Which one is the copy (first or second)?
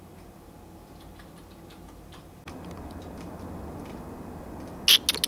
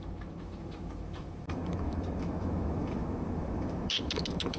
second